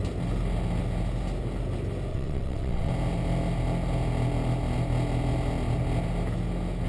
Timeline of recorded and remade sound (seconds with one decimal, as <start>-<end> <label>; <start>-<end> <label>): 0.0-2.1 recorded; 2.1-2.9 remade; 2.9-6.9 recorded